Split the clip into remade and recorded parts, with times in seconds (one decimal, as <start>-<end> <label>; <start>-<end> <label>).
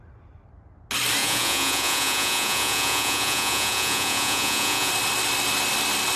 0.0-1.2 recorded; 1.2-4.9 remade; 4.9-6.2 recorded